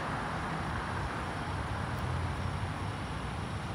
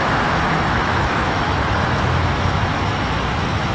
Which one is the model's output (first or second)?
second